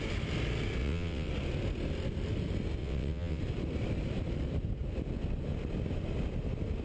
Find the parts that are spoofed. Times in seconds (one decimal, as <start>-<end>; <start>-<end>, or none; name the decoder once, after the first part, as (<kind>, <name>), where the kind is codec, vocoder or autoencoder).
0.8-1.3 (vocoder, WaveNeXt); 2.8-3.4